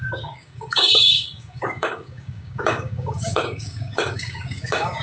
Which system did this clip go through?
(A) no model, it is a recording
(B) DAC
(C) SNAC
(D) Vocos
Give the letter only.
B